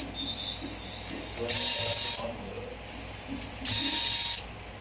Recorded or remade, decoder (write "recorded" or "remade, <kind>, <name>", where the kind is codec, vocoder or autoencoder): recorded